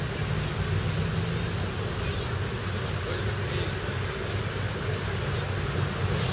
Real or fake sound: real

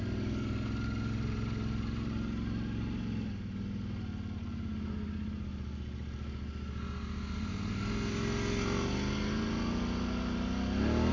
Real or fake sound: real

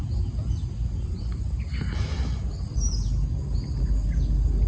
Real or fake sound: real